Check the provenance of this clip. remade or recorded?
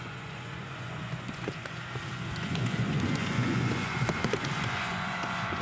remade